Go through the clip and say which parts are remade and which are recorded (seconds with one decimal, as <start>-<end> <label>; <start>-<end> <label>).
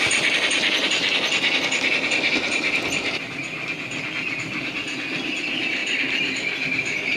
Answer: 0.0-7.2 recorded